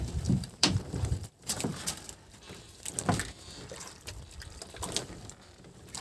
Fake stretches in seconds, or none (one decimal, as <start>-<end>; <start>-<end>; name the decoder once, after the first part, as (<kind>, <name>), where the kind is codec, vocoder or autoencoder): 0.0-1.7 (vocoder, BigVGAN v2); 5.0-6.0